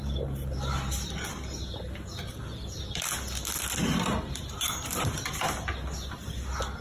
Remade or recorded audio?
recorded